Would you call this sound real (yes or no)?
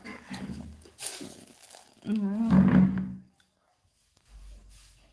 no